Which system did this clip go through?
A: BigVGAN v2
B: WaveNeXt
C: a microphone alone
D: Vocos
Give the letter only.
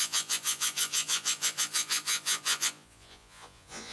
D